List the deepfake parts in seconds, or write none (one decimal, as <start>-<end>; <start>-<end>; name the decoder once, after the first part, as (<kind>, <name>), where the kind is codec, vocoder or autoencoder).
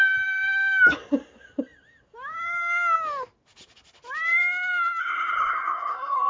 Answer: 5.0-6.3 (codec, SNAC)